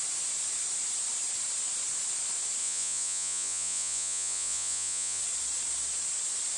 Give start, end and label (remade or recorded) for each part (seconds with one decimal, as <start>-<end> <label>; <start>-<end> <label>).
0.0-2.6 recorded; 2.6-5.2 remade; 5.2-6.6 recorded